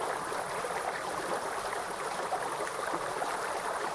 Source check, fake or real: real